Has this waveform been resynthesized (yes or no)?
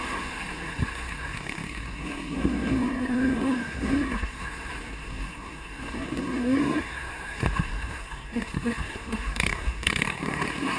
yes